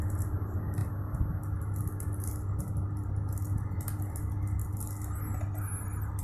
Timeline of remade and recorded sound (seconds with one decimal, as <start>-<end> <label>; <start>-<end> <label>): 0.0-6.2 recorded